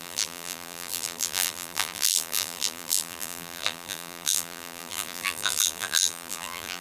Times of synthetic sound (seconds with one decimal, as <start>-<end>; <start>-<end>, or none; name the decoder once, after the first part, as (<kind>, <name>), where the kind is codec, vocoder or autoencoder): 0.0-6.8 (vocoder, BigVGAN v2)